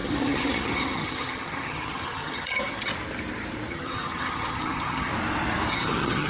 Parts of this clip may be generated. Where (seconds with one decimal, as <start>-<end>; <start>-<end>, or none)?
0.0-2.9; 3.7-5.1; 5.7-6.3